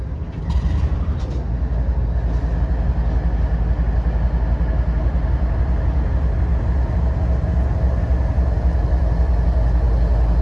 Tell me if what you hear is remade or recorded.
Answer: recorded